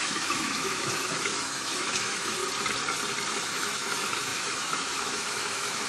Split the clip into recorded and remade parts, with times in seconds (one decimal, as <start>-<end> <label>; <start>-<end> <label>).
0.0-2.4 remade; 2.4-3.4 recorded; 3.4-5.9 remade